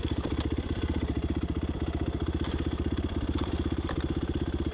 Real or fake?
real